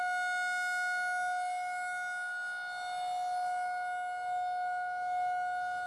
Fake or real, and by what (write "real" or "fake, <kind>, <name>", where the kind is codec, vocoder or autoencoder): real